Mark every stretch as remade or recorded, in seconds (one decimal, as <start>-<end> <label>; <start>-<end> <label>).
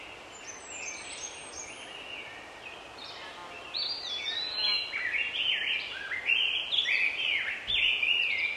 0.0-8.6 recorded